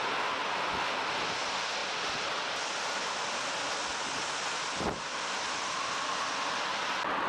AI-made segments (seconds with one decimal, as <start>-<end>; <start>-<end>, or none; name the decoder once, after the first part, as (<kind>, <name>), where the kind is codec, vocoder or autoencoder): none